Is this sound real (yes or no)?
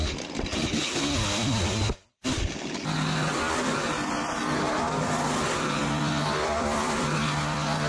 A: yes